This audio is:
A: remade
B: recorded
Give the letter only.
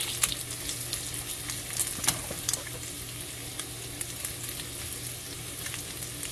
B